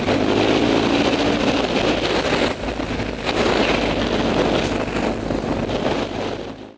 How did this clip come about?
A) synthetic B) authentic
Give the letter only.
B